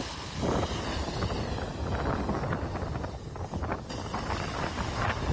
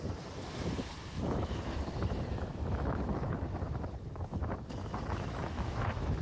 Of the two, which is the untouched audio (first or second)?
first